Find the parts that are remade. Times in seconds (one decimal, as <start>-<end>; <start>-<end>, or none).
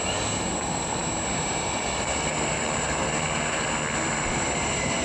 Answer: 0.0-1.0; 1.5-3.1; 4.2-5.0